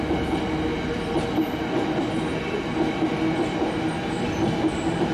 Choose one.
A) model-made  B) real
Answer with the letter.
B